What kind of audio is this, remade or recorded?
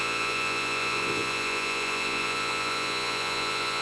remade